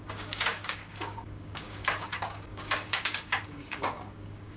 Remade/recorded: remade